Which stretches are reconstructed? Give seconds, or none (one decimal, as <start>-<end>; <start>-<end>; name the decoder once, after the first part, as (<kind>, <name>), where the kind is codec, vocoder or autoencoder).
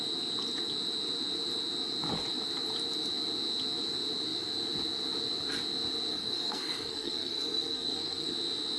6.1-8.3 (codec, SNAC)